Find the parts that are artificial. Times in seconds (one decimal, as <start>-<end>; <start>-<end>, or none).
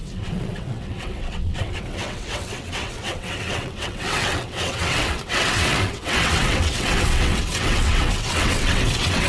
0.0-9.3